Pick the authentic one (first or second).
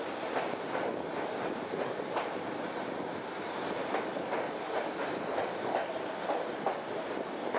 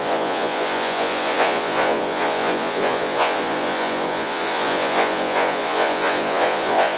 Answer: first